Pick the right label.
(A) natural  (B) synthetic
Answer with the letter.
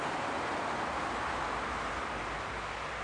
A